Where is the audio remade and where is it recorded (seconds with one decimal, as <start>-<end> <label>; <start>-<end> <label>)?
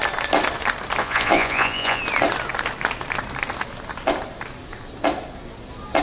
0.0-1.0 recorded; 1.0-2.0 remade; 2.0-6.0 recorded